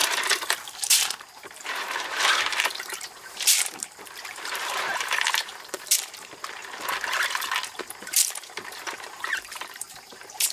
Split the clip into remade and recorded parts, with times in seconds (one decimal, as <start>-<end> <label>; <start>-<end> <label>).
0.0-6.6 remade; 6.6-8.0 recorded; 8.0-10.5 remade

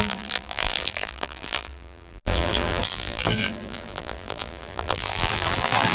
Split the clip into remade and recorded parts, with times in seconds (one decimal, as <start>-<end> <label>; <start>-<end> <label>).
0.0-5.9 remade

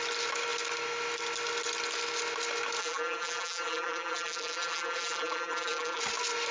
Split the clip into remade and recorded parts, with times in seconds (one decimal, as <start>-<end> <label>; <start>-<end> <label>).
0.0-2.8 recorded; 2.8-6.0 remade; 6.0-6.5 recorded

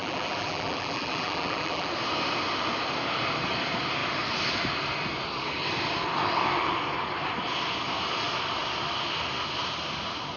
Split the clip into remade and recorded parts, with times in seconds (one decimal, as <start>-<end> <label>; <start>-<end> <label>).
0.0-1.9 remade; 1.9-10.4 recorded

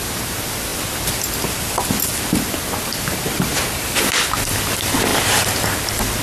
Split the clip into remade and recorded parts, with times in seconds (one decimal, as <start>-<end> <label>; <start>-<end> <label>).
0.0-6.2 recorded

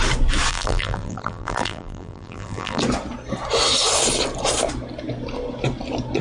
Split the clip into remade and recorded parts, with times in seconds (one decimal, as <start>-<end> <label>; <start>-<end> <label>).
0.0-0.5 recorded; 0.5-2.8 remade; 2.8-6.2 recorded

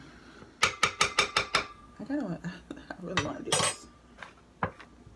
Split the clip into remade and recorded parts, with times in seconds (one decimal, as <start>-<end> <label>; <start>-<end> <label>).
0.0-5.2 recorded

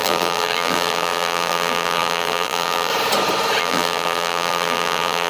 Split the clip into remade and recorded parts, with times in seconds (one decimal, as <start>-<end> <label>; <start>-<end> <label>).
0.0-2.9 remade; 2.9-3.6 recorded; 3.6-5.3 remade